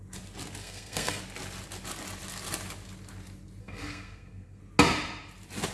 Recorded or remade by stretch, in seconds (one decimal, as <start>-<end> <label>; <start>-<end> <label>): 0.0-0.6 recorded; 0.6-1.2 remade; 1.2-3.6 recorded; 3.6-4.6 remade; 4.6-5.7 recorded